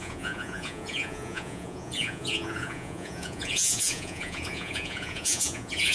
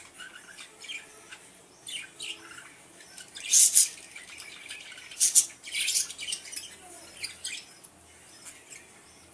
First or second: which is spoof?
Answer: first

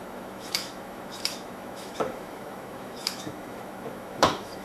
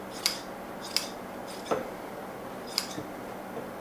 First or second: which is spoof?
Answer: first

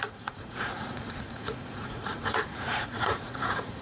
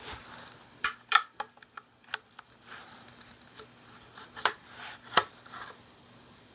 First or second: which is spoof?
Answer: first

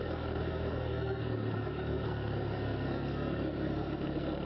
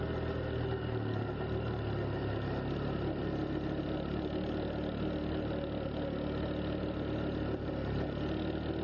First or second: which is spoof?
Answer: first